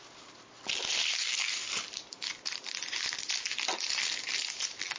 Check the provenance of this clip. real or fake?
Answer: real